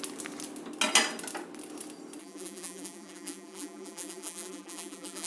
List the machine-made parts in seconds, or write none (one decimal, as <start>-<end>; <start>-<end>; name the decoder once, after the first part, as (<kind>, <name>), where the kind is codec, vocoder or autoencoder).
2.2-5.3 (vocoder, BigVGAN v2)